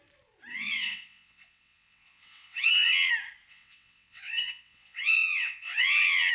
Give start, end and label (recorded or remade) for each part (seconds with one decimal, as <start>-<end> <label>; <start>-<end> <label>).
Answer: 0.0-0.5 recorded; 0.5-3.1 remade; 3.1-3.5 recorded; 3.5-6.3 remade